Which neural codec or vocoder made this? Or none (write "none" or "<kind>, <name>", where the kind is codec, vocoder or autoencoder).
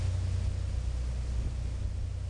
none